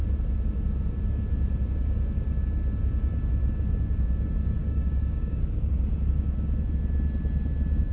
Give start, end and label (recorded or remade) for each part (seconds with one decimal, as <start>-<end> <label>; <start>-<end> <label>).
0.0-4.6 recorded; 4.6-5.9 remade; 5.9-7.9 recorded